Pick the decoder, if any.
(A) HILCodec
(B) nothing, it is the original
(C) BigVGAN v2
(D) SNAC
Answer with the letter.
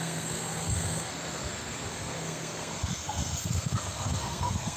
D